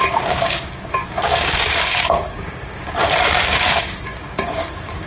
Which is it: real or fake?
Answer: fake